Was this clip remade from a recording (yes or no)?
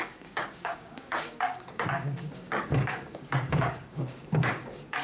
yes